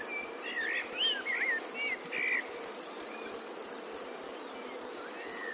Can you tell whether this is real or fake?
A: real